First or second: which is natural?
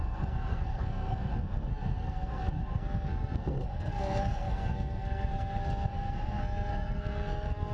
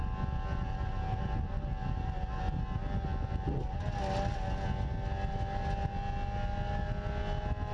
second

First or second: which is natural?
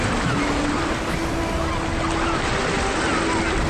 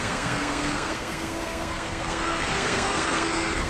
first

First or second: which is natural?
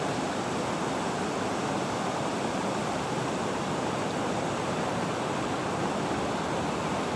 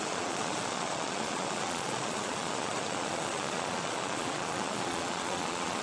first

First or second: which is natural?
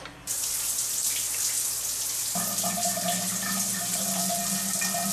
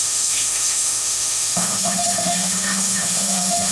first